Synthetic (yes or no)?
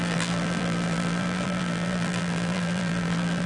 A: yes